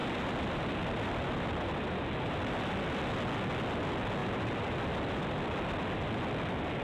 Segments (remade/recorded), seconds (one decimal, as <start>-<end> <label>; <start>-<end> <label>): 0.0-1.3 remade; 1.3-4.2 recorded; 4.2-5.2 remade; 5.2-6.8 recorded